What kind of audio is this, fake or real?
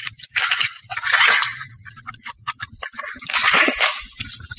fake